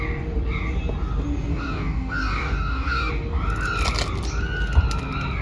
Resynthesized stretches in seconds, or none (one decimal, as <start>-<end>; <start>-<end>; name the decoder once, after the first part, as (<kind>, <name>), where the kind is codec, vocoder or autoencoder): 1.5-3.1 (codec, DAC)